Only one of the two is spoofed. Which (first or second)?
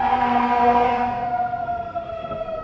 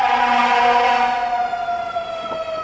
first